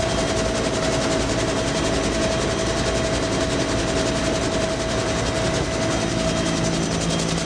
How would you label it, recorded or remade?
recorded